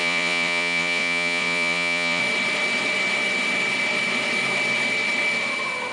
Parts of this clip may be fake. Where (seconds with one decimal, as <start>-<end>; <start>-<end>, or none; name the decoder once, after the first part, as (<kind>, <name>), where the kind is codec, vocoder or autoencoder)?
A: 0.0-2.2 (vocoder, Vocos)